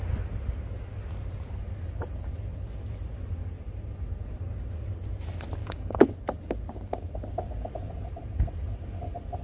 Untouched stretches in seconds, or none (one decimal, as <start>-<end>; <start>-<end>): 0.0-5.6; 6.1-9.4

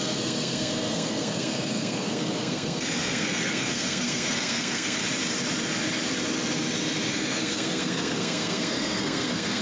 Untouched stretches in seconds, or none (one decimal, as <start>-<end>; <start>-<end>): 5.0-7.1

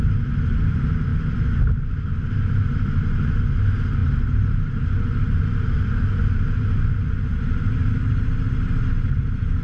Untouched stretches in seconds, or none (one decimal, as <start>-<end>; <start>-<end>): 0.0-9.6

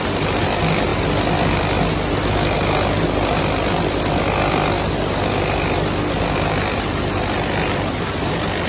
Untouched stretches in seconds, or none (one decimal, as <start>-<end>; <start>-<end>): 0.0-8.7

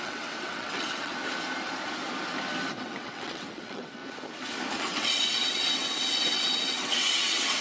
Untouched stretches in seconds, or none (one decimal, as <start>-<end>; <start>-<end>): 1.1-2.7; 4.0-4.8

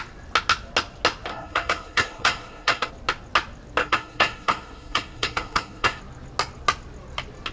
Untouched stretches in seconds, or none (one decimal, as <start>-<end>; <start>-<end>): 0.0-1.3; 2.9-3.8; 6.0-7.5